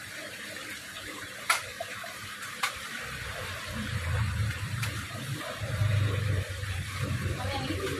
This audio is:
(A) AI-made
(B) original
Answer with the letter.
A